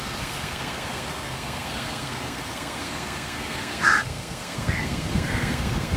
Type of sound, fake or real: fake